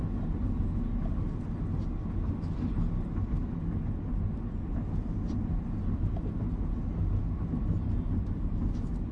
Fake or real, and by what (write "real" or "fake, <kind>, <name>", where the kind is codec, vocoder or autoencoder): real